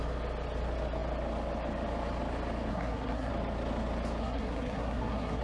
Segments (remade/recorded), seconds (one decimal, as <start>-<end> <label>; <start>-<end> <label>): 0.0-2.7 recorded; 2.7-3.3 remade; 3.3-4.2 recorded; 4.2-5.4 remade